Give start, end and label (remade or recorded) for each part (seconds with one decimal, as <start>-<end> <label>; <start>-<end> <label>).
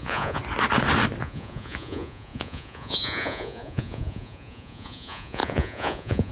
0.0-0.4 remade; 0.4-1.2 recorded; 1.2-6.3 remade